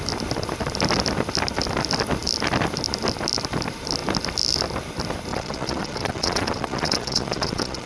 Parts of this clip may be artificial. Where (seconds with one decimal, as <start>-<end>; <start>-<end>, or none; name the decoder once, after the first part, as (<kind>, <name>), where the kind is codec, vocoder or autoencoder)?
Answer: 5.3-7.9 (vocoder, Vocos)